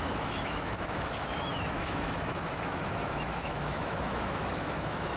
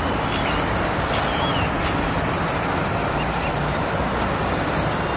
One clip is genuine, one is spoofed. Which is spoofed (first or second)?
first